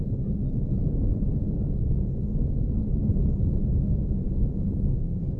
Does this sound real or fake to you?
real